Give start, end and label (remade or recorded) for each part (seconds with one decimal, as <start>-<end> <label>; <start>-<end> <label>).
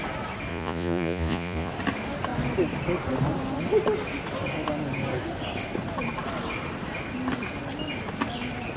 0.0-0.5 recorded; 0.5-1.7 remade; 1.7-8.8 recorded